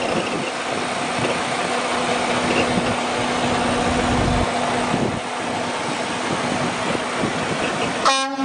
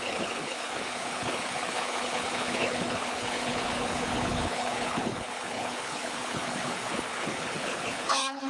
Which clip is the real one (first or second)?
first